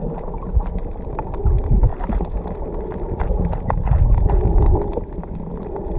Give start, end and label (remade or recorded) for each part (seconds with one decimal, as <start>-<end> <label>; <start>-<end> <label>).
0.0-6.0 recorded